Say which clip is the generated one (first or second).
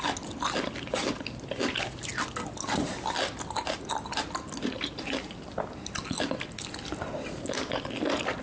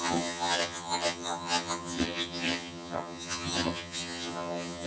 second